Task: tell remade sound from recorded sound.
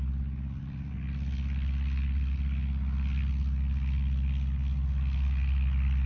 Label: recorded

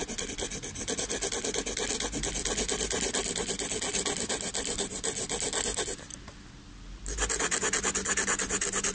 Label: recorded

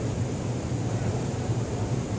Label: remade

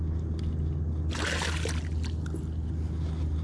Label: recorded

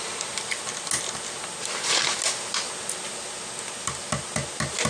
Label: recorded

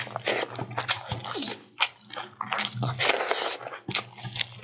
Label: recorded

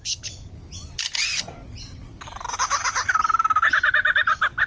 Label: recorded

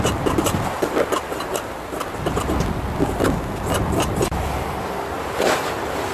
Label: recorded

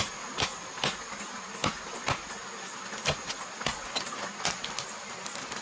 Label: recorded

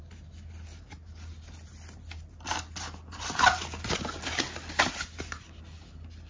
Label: recorded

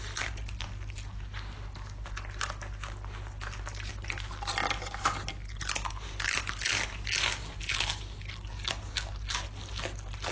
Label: recorded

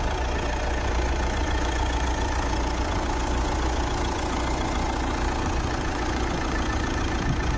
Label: remade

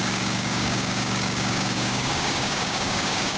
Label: remade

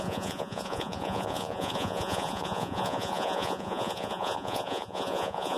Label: remade